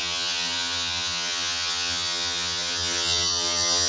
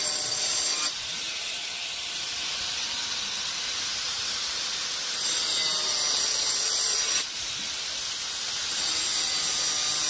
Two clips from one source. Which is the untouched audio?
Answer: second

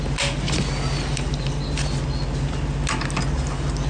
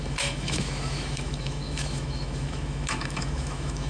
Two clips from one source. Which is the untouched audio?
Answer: first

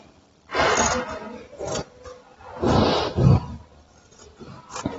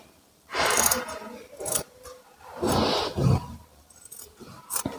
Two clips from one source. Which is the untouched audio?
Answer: first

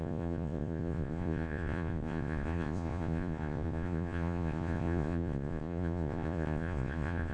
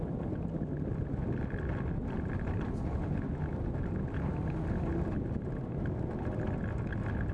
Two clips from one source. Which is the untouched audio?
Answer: second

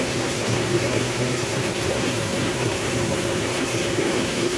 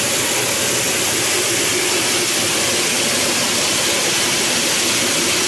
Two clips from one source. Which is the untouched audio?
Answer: second